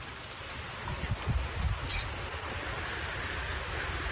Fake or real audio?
real